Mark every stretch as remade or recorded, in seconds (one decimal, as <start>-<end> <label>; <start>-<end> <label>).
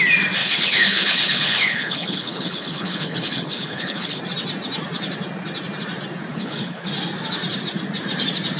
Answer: 0.0-0.4 recorded; 0.4-4.2 remade; 4.2-6.3 recorded; 6.3-6.9 remade; 6.9-8.6 recorded